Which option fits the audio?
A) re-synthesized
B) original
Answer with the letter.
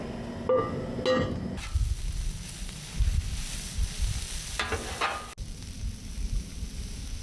B